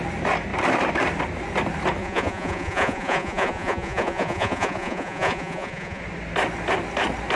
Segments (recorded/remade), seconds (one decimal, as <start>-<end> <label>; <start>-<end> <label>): 0.0-2.0 recorded; 2.0-6.0 remade; 6.0-7.4 recorded

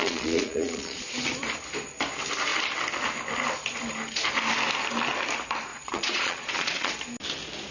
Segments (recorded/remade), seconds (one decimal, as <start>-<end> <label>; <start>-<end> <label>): 0.0-1.0 remade; 1.0-5.7 recorded; 5.7-6.9 remade; 6.9-7.7 recorded